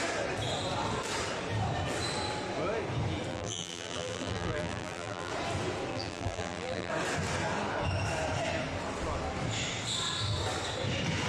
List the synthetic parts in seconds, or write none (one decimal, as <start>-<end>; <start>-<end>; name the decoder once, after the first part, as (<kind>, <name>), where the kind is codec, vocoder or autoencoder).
3.3-5.3 (vocoder, BigVGAN v2); 5.9-6.9